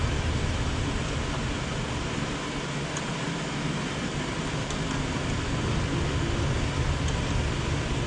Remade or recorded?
recorded